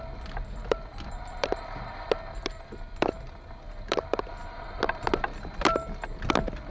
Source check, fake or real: real